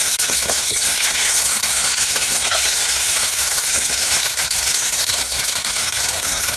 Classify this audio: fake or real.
fake